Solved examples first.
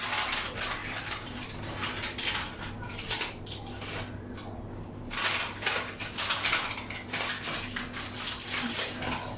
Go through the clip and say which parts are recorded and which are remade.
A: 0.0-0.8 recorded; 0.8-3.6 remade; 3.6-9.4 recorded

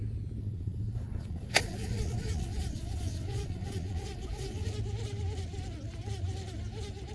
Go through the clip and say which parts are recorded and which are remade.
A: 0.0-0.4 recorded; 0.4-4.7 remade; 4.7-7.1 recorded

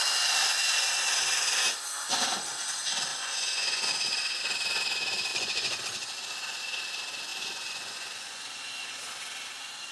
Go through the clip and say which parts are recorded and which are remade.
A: 0.0-3.1 recorded; 3.1-3.9 remade; 3.9-5.3 recorded; 5.3-5.8 remade; 5.8-7.3 recorded; 7.3-9.0 remade; 9.0-9.9 recorded

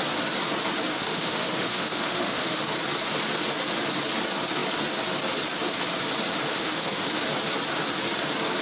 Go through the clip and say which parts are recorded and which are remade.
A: 0.0-0.9 recorded; 0.9-2.6 remade; 2.6-6.5 recorded; 6.5-7.2 remade; 7.2-8.6 recorded